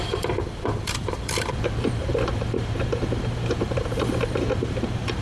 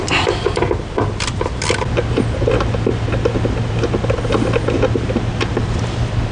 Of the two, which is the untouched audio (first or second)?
second